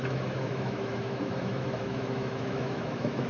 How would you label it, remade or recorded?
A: remade